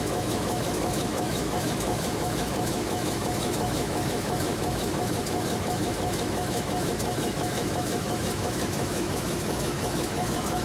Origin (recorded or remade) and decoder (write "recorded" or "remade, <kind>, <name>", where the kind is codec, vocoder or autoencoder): remade, autoencoder, DAC-VAE